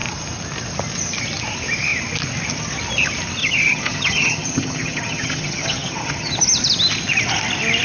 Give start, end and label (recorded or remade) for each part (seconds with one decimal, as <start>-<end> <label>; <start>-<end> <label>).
0.0-3.4 recorded; 3.4-6.3 remade; 6.3-7.8 recorded